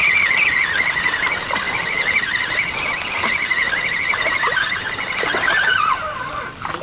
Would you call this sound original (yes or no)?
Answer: yes